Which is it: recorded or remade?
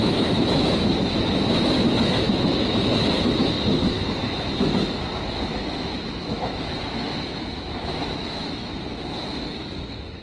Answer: remade